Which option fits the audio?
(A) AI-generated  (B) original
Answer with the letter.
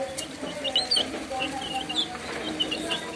B